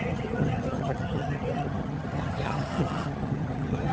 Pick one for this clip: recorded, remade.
remade